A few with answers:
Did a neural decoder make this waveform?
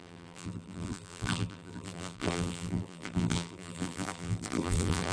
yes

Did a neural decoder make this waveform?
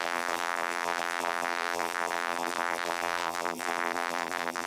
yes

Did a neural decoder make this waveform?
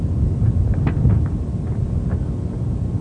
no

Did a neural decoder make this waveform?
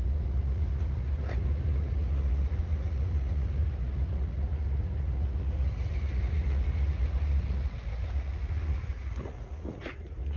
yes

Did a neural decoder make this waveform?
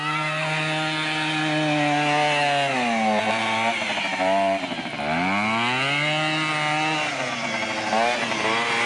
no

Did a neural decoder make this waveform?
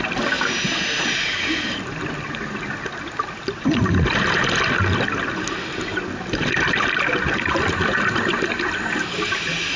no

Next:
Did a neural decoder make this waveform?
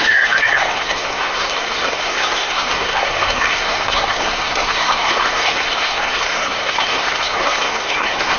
yes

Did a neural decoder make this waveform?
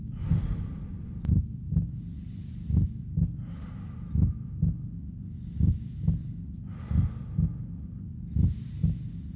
no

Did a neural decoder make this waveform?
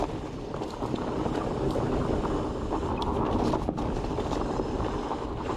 no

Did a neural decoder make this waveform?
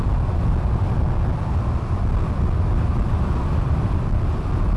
no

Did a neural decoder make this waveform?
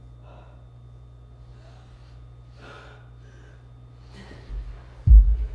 no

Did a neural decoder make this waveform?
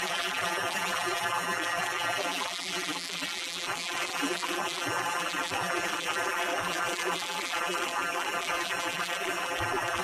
yes